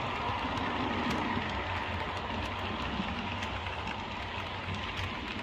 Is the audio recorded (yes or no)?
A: yes